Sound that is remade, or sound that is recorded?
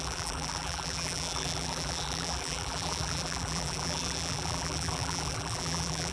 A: remade